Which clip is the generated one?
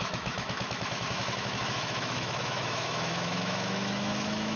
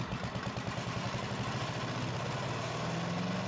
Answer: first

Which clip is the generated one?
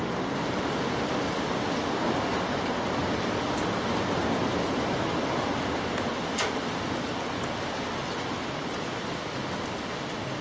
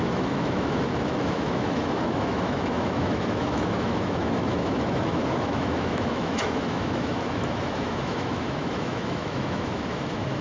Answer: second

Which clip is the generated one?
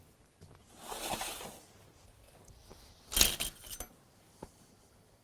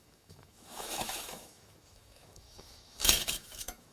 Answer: second